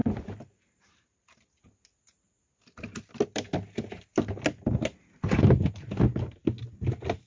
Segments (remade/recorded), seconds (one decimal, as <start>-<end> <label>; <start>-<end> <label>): 0.0-1.5 remade; 1.5-7.3 recorded